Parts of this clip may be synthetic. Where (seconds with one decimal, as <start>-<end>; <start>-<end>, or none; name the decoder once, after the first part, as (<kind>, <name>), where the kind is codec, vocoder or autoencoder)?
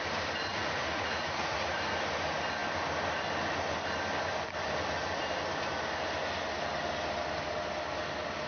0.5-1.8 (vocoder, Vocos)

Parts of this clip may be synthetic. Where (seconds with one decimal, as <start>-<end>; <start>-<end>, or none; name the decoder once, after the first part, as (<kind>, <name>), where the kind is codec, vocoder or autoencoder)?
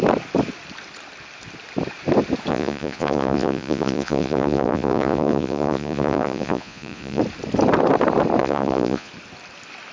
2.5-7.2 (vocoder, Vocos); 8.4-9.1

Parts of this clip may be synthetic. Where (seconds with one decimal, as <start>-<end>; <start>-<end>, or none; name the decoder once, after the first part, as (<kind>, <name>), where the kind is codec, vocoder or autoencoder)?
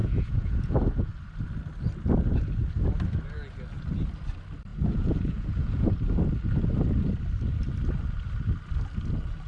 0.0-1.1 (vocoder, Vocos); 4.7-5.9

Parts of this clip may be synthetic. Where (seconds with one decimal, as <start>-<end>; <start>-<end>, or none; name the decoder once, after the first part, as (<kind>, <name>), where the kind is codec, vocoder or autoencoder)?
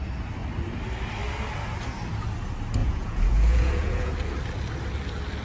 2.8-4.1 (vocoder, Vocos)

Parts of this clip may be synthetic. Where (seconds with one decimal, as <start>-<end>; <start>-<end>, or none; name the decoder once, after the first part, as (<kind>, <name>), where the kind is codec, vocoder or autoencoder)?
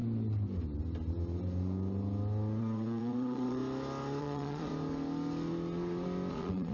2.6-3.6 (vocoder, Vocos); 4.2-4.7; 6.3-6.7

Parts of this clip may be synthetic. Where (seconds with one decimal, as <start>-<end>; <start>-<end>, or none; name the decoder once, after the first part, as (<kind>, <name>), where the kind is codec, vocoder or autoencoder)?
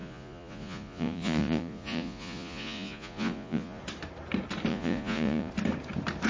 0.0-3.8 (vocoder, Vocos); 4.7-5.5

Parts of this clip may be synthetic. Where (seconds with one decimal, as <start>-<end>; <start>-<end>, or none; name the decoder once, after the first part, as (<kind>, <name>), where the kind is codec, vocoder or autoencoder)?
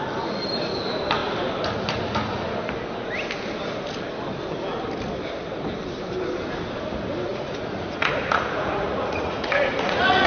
7.3-10.3 (vocoder, Vocos)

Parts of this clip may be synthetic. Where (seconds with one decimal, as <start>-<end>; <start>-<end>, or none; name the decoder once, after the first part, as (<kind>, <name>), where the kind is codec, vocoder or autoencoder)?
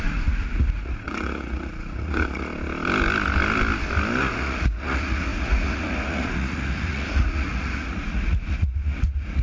0.0-2.5 (vocoder, Vocos); 4.2-9.4